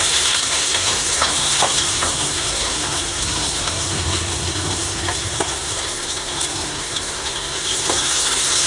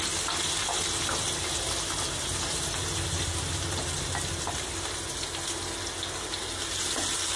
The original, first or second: second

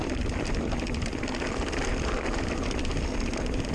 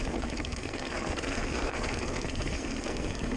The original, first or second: first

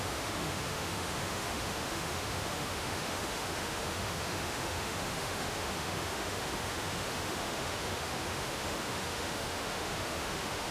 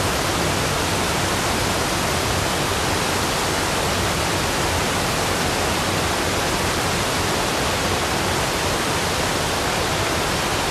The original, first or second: second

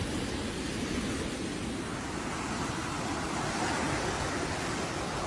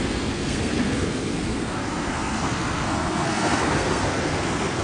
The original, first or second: first